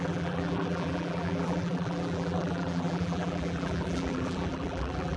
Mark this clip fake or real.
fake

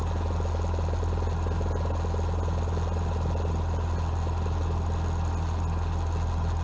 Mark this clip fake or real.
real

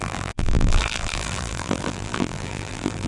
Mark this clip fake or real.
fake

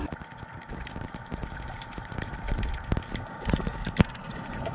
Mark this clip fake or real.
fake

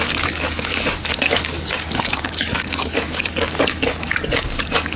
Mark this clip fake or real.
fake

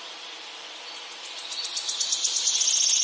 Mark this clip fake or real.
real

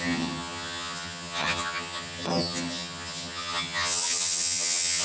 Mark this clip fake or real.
fake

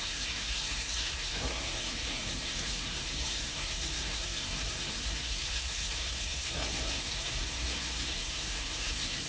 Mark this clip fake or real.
fake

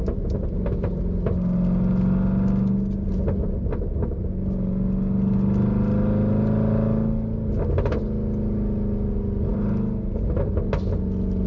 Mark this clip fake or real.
real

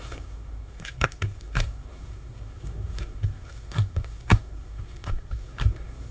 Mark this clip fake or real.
fake